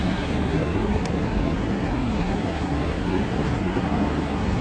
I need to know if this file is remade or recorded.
remade